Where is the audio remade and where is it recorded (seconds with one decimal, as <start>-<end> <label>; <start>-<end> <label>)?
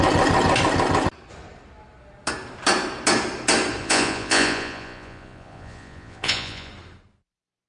0.0-3.8 recorded; 3.8-6.7 remade; 6.7-7.7 recorded